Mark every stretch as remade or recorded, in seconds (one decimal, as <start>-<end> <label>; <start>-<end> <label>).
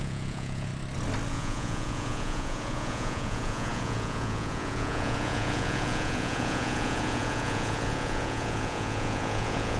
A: 0.0-0.7 remade; 0.7-1.3 recorded; 1.3-9.8 remade